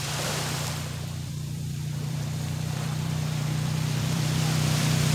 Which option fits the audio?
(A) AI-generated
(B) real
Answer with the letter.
A